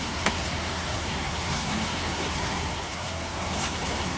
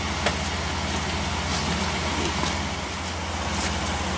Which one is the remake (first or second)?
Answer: first